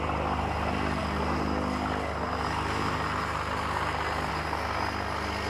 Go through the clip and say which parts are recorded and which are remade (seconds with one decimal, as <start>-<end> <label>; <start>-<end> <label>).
0.0-5.5 recorded

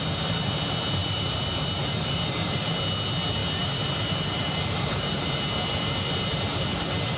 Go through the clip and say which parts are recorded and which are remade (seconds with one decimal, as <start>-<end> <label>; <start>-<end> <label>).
0.0-1.0 recorded; 1.0-2.3 remade; 2.3-3.4 recorded; 3.4-6.3 remade; 6.3-7.2 recorded